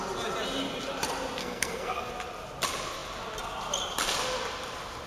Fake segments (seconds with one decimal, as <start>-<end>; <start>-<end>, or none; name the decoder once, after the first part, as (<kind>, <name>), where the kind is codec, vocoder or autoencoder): 1.4-2.1 (codec, SNAC)